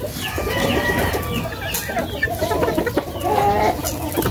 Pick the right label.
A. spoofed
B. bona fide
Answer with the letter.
B